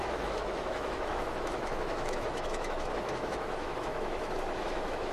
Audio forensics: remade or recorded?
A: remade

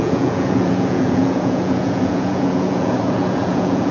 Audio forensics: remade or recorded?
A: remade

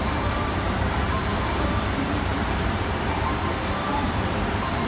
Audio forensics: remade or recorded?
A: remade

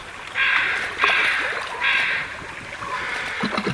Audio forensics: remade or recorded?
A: recorded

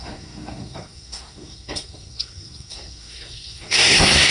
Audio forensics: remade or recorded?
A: remade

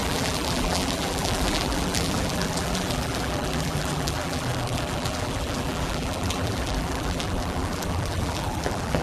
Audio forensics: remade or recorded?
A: remade